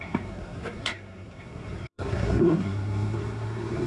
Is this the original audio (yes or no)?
no